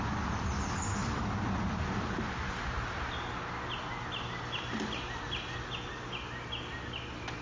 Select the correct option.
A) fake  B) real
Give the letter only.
B